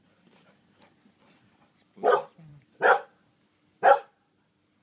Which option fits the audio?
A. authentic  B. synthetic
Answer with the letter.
B